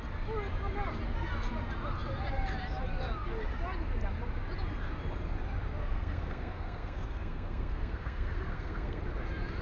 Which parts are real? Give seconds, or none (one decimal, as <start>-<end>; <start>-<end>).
0.0-5.8; 9.0-9.6